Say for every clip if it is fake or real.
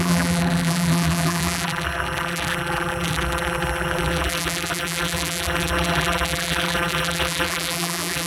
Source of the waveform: fake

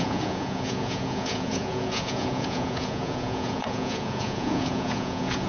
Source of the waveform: fake